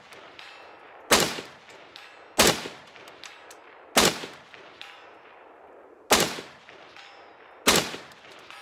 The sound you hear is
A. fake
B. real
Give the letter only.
B